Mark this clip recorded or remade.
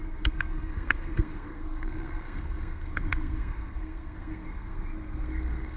remade